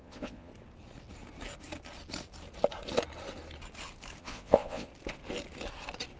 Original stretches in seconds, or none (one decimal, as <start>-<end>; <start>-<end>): 0.5-4.2; 4.9-6.2

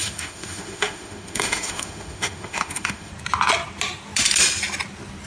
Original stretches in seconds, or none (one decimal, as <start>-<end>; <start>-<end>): 3.1-5.3